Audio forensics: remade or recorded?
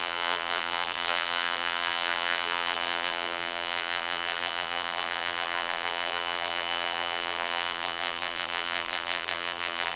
remade